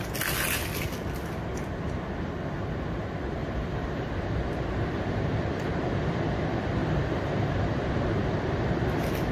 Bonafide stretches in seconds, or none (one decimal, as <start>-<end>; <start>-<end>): 0.0-3.4; 4.1-6.8; 7.7-9.3

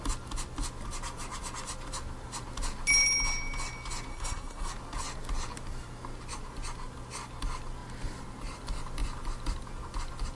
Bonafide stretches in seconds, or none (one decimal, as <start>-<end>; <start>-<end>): 0.0-4.1; 4.7-10.4

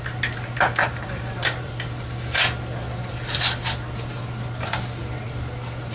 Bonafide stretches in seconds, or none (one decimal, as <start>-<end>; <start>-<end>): 0.0-0.8; 1.7-5.9

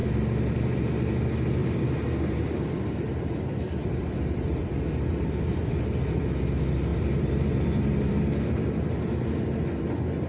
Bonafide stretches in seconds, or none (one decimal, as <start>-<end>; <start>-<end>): 0.8-1.6; 5.8-6.9; 8.1-10.3

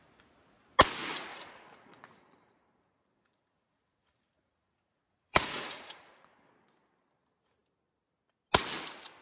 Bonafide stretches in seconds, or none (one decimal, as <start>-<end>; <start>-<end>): 0.0-1.3; 6.5-9.2

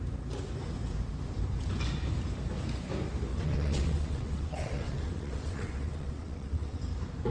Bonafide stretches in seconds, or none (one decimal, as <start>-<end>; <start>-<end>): 0.0-3.3; 6.8-7.3

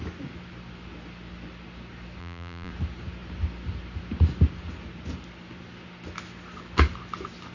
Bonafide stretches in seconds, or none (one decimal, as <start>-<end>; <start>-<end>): 0.0-2.2; 2.7-7.5